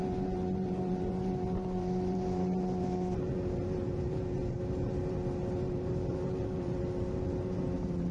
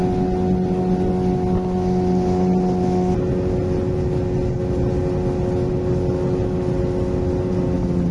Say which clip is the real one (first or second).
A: second